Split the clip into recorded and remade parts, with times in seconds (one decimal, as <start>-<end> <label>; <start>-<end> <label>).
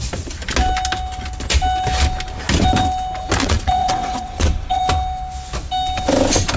0.0-3.4 recorded; 3.4-4.8 remade; 4.8-6.6 recorded